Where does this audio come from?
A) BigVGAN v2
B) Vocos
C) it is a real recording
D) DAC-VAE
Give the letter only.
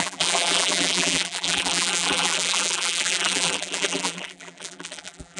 A